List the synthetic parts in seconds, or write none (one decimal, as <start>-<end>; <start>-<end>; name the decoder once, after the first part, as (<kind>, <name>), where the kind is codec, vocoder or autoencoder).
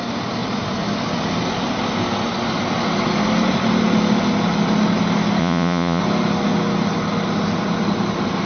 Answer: 5.4-6.0 (vocoder, Vocos)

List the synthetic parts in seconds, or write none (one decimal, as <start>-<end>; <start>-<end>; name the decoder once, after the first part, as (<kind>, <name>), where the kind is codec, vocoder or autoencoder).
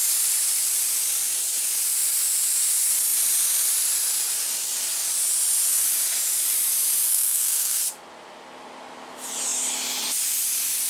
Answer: 7.1-7.8 (codec, SNAC)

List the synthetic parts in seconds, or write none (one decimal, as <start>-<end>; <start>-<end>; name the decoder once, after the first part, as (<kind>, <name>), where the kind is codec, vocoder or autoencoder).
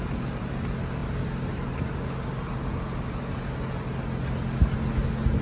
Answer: none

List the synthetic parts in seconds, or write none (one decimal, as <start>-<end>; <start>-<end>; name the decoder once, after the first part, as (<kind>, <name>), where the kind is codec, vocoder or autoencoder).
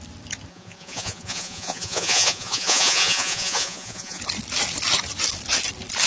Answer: 0.5-4.2 (vocoder, Vocos)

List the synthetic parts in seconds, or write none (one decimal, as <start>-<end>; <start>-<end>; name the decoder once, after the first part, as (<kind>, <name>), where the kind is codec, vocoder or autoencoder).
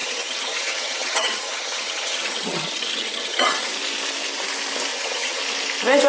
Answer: 0.0-3.7 (vocoder, HiFi-GAN); 4.9-5.4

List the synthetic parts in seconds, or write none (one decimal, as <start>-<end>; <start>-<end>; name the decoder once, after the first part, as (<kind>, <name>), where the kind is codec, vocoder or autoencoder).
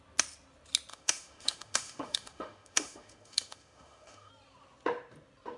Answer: 0.9-4.3 (autoencoder, DAC-VAE)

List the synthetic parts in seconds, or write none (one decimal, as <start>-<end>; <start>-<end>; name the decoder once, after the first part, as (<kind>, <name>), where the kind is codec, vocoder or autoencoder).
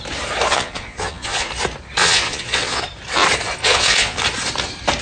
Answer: 0.5-1.5 (vocoder, Vocos); 2.0-2.8; 3.6-4.2